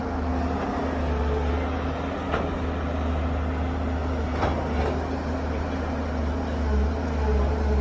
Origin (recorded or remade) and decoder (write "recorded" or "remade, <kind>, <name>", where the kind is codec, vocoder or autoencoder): recorded